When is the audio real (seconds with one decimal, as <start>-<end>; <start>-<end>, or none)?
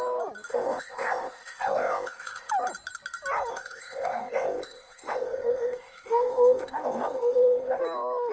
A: 0.0-0.5; 2.5-3.5; 7.8-8.3